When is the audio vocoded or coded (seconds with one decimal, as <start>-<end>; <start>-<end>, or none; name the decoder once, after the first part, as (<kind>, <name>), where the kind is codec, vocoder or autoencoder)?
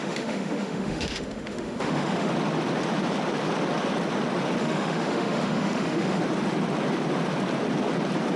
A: 0.0-2.3 (autoencoder, DAC-VAE); 4.6-6.2